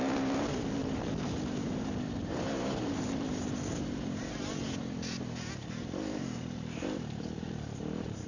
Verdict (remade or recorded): remade